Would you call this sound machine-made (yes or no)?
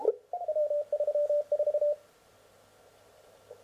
no